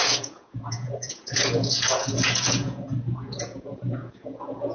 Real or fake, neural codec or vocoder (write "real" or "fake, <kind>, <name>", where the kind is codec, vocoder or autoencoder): fake, vocoder, Vocos